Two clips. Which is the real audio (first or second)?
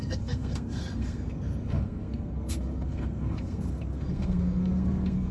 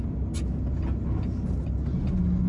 second